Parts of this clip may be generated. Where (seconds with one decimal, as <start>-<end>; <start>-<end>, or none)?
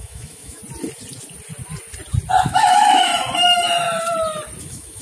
0.0-0.6; 2.4-3.1; 4.6-5.0